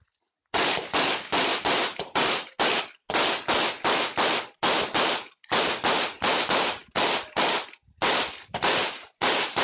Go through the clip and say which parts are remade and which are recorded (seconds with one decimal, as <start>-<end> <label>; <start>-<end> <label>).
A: 0.0-1.5 recorded; 1.5-2.8 remade; 2.8-8.8 recorded; 8.8-9.6 remade